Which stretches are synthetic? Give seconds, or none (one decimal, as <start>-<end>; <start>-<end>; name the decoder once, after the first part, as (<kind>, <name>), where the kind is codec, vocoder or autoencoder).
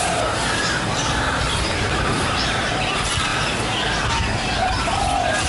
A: 0.0-2.7 (vocoder, BigVGAN v2)